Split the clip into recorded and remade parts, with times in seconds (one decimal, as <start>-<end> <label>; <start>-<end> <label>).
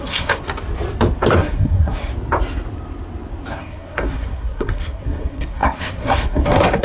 0.0-0.4 remade; 0.4-1.3 recorded; 1.3-2.1 remade; 2.1-3.5 recorded; 3.5-6.8 remade